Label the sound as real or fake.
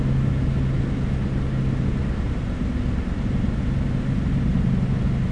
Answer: real